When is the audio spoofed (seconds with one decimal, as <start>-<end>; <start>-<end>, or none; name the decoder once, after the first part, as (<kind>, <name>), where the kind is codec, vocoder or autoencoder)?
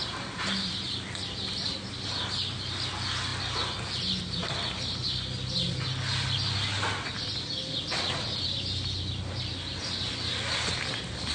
none